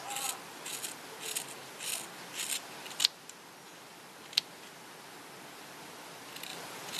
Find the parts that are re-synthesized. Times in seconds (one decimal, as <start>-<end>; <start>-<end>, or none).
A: none